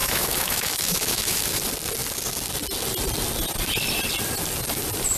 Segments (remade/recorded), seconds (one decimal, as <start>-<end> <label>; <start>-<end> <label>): 0.0-1.6 remade; 1.6-5.2 recorded